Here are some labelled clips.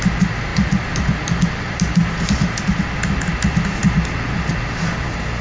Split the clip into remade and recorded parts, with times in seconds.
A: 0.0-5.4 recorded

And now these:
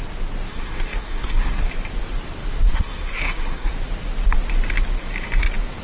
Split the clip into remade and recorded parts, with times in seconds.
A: 0.0-0.5 recorded; 0.5-1.5 remade; 1.5-2.7 recorded; 2.7-3.7 remade; 3.7-5.8 recorded

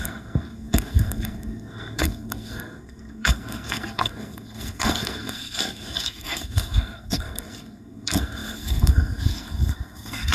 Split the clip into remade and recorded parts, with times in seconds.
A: 0.0-10.3 remade

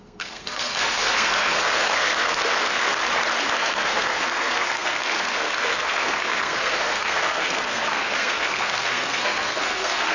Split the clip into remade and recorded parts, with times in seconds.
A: 0.0-3.0 remade; 3.0-3.5 recorded; 3.5-10.1 remade